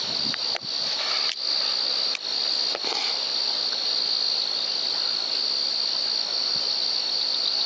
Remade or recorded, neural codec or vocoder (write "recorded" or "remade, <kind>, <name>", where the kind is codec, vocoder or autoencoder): recorded